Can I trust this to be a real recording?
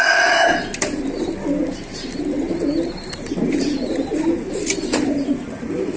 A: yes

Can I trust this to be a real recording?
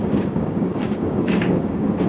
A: no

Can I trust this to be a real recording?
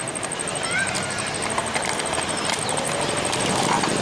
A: yes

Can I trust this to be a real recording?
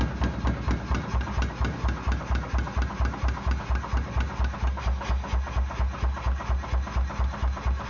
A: yes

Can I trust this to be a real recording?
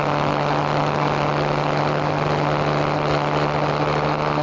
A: yes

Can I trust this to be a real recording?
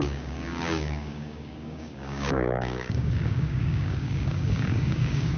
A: no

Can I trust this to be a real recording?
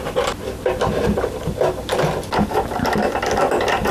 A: yes